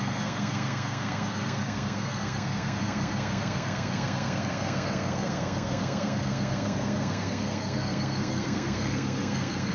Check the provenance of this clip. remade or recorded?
remade